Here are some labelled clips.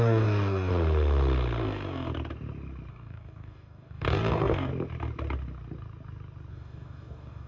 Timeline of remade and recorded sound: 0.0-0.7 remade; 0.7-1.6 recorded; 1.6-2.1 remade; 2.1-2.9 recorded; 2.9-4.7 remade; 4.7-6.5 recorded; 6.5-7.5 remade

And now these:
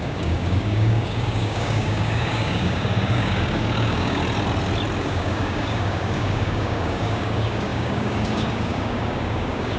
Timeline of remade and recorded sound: 0.0-4.2 remade; 4.2-5.0 recorded; 5.0-9.8 remade

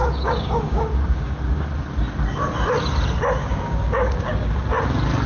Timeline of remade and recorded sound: 0.0-1.7 remade; 1.7-3.4 recorded; 3.4-4.6 remade; 4.6-5.3 recorded

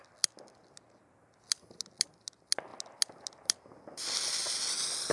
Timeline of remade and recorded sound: 0.0-5.1 recorded